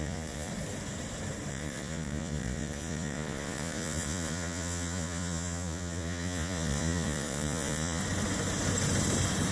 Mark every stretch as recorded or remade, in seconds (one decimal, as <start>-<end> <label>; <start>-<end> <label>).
0.0-0.5 remade; 0.5-1.5 recorded; 1.5-8.0 remade; 8.0-9.5 recorded